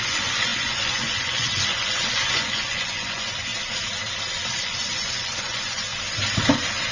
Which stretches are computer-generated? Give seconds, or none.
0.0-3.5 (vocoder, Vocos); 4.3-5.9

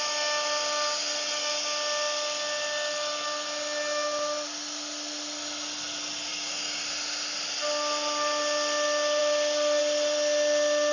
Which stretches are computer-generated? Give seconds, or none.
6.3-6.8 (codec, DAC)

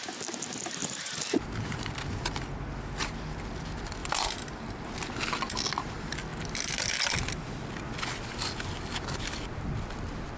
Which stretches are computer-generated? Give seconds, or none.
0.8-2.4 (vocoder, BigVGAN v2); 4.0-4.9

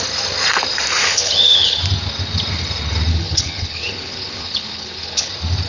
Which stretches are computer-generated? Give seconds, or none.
1.0-1.8 (codec, HILCodec); 3.1-5.3

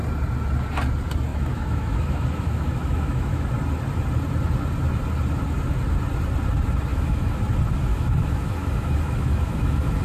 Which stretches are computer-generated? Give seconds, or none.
1.3-3.5 (autoencoder, DAC-VAE); 6.9-7.4; 7.9-10.0

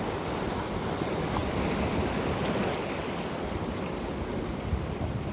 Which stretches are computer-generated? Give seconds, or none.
none

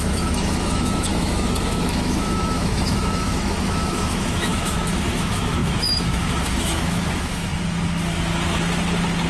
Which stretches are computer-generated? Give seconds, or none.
0.0-7.5 (autoencoder, DAC-VAE)